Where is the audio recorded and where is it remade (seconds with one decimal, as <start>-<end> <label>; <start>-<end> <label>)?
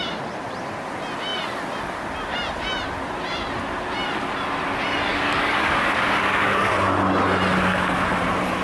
0.0-5.1 recorded; 5.1-6.7 remade; 6.7-8.6 recorded